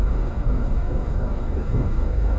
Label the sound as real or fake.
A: fake